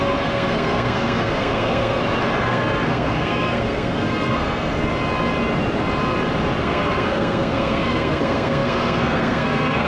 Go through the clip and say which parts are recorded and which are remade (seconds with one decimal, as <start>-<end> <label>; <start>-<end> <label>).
0.0-2.0 remade; 2.0-2.5 recorded; 2.5-4.9 remade; 4.9-6.6 recorded; 6.6-9.9 remade